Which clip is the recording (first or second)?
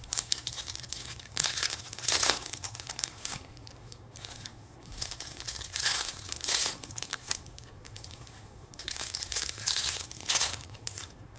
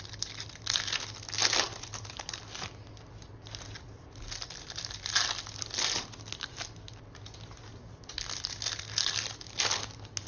second